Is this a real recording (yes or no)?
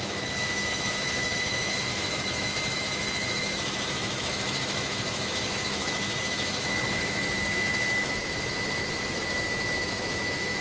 no